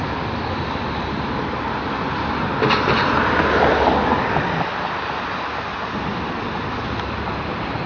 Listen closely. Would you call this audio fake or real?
real